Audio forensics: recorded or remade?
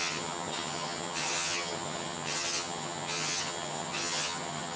remade